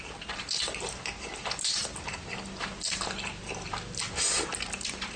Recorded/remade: recorded